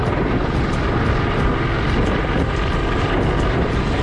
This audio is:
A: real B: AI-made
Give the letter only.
A